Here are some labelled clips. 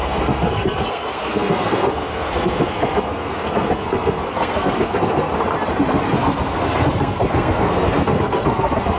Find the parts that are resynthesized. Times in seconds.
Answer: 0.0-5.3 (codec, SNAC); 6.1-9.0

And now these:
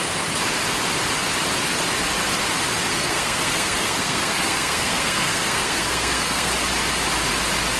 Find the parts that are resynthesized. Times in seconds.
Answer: 2.9-6.5 (codec, SNAC)